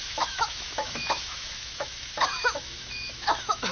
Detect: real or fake fake